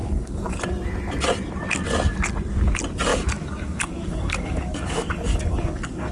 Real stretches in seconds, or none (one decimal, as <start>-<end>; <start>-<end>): 0.5-3.1